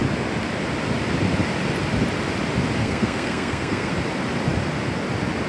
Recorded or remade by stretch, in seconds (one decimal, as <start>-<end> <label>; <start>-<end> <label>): 0.0-2.8 recorded; 2.8-3.9 remade; 3.9-5.5 recorded